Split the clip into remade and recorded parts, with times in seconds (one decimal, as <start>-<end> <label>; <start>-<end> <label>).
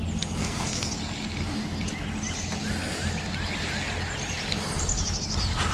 0.0-0.4 recorded; 0.4-0.9 remade; 0.9-5.7 recorded